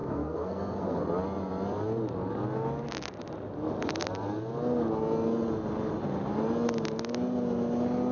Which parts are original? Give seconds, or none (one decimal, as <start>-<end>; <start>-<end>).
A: 1.0-8.1